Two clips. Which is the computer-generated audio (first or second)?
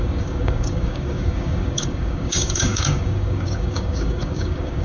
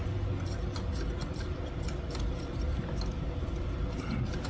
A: first